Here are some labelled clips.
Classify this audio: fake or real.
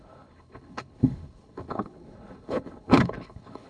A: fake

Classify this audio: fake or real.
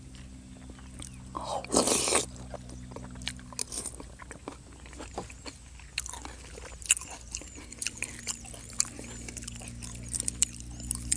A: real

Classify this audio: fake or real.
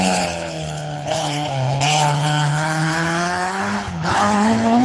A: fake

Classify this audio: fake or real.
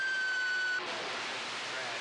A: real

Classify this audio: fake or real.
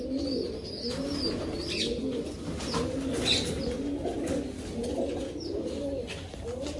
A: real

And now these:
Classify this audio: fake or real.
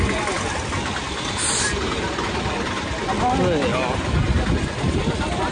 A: real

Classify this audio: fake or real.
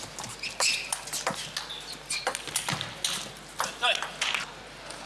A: real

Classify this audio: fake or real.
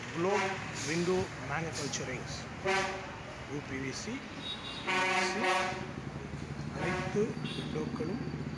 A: real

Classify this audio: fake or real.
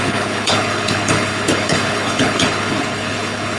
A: fake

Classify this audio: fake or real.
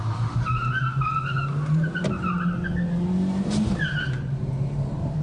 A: real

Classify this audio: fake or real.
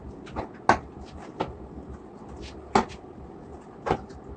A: real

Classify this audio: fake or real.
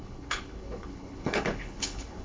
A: fake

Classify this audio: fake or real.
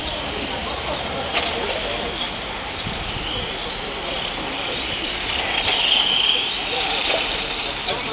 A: real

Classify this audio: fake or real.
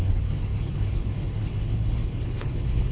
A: fake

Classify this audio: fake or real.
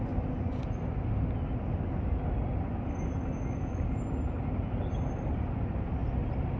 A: real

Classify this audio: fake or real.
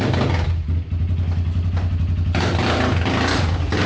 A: real